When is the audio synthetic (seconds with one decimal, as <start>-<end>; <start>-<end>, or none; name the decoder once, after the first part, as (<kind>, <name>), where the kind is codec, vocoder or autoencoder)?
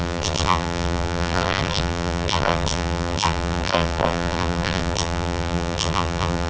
0.0-6.5 (vocoder, BigVGAN v2)